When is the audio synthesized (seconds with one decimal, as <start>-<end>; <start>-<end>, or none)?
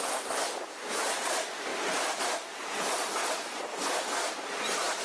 none